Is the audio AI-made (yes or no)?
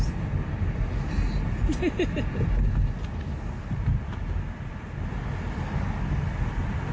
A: no